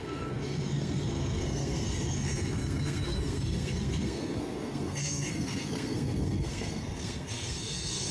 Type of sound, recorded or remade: remade